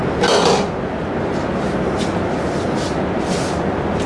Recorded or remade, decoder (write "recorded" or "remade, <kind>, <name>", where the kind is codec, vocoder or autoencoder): recorded